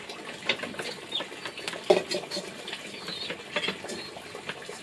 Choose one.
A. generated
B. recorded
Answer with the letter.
B